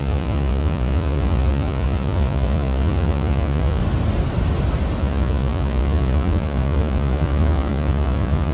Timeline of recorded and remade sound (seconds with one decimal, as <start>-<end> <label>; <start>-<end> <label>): 0.0-3.8 remade; 3.8-5.0 recorded; 5.0-8.5 remade